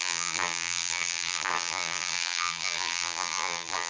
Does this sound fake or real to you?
fake